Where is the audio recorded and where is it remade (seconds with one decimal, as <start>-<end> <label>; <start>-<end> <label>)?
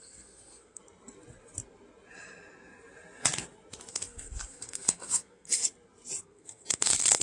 0.0-0.8 remade; 0.8-3.9 recorded; 3.9-5.6 remade; 5.6-6.2 recorded; 6.2-7.2 remade